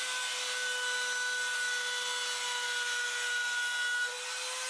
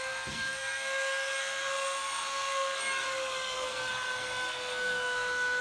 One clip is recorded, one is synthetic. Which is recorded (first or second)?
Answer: first